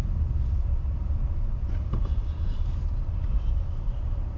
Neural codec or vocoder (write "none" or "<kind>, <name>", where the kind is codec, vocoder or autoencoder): vocoder, BigVGAN v2